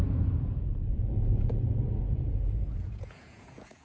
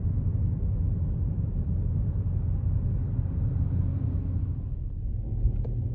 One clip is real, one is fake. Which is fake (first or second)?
first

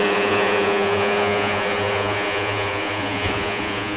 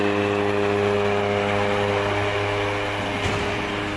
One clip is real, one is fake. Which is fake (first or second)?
first